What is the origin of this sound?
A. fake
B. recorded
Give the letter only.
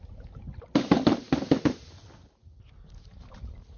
B